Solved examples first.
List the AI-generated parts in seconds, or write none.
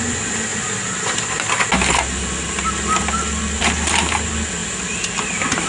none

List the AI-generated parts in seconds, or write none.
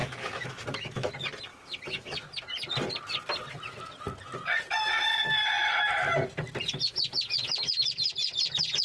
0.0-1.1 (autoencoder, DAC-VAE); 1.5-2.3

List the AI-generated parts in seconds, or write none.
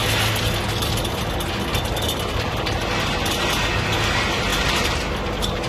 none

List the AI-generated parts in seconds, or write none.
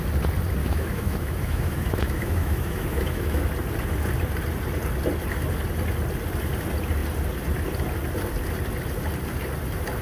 0.6-3.4 (autoencoder, DAC-VAE)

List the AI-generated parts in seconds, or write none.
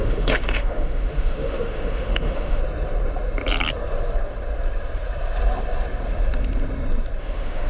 0.0-2.6 (autoencoder, DAC-VAE); 7.2-7.7